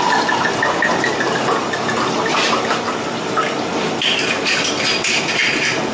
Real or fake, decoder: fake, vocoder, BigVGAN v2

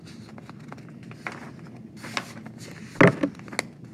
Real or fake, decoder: real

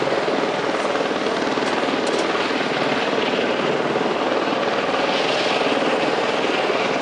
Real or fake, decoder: real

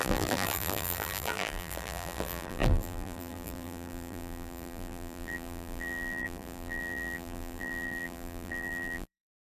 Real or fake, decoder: fake, vocoder, BigVGAN v2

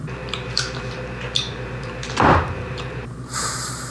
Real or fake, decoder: fake, vocoder, BigVGAN v2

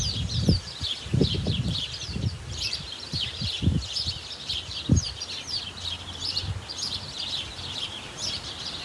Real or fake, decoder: fake, vocoder, BigVGAN v2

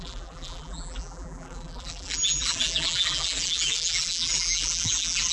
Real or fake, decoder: fake, vocoder, BigVGAN v2